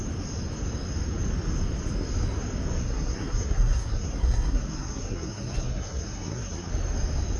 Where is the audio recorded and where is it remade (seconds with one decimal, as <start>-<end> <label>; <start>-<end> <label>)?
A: 0.0-2.8 recorded; 2.8-6.7 remade; 6.7-7.4 recorded